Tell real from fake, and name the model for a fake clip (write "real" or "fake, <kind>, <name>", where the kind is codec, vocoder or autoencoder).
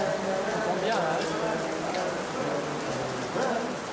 real